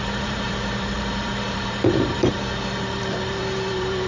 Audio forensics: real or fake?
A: fake